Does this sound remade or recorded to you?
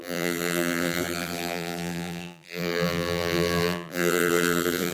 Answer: remade